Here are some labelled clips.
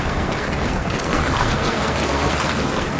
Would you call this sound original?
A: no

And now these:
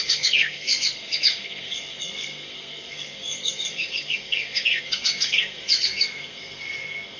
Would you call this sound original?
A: no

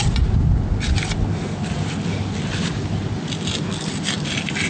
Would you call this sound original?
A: yes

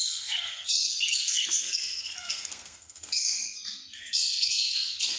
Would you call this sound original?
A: no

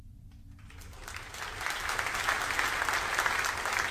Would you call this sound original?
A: yes